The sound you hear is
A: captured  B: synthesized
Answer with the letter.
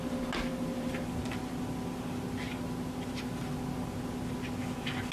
A